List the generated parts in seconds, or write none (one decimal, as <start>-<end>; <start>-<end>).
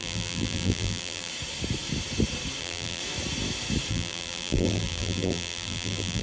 0.0-1.3; 2.6-3.0; 3.9-6.2